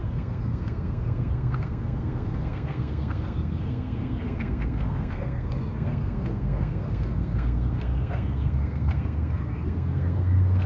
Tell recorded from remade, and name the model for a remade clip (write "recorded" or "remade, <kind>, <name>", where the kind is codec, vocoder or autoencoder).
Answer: remade, codec, SNAC